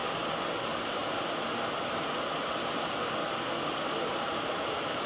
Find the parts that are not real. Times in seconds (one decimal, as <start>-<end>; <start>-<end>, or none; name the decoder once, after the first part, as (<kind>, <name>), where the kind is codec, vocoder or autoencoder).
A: 0.6-1.0 (vocoder, BigVGAN v2); 4.1-5.1